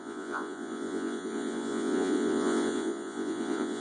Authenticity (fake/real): fake